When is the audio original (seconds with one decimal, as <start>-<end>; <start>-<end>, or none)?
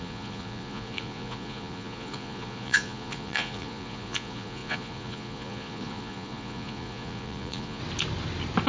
7.8-8.7